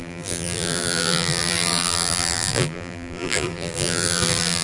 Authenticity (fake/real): fake